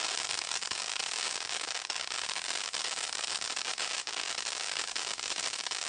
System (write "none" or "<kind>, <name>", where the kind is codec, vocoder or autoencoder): codec, DAC